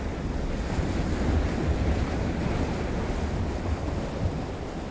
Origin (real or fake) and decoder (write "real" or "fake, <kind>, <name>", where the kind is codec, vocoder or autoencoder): real